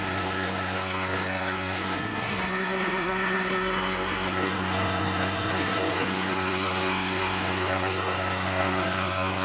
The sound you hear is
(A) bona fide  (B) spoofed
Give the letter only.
B